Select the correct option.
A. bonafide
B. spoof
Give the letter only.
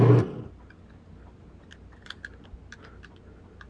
A